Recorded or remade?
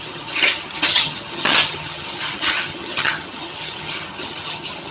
remade